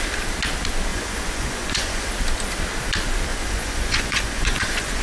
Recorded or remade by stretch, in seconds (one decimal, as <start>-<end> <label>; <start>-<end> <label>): 0.0-0.9 recorded; 0.9-2.1 remade; 2.1-3.3 recorded; 3.3-5.0 remade